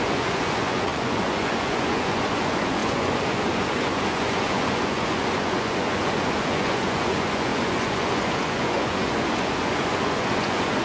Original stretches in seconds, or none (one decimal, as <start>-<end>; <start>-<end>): none